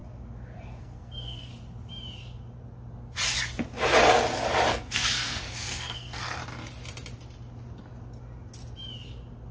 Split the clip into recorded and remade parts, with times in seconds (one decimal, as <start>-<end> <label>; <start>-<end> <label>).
0.0-0.8 recorded; 0.8-1.5 remade; 1.5-4.7 recorded; 4.7-6.4 remade; 6.4-9.5 recorded